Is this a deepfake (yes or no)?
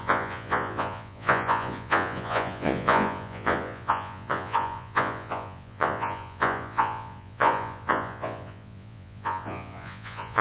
yes